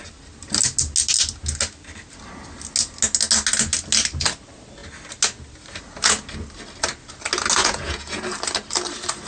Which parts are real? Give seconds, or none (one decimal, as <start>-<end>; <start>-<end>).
0.0-7.6; 8.2-9.3